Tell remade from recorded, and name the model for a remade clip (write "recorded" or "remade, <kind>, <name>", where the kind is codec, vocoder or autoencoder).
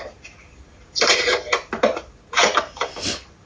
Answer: recorded